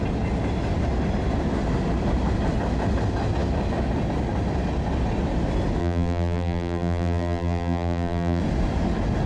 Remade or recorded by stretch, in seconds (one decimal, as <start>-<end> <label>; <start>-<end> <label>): 0.0-5.8 recorded; 5.8-8.4 remade; 8.4-9.3 recorded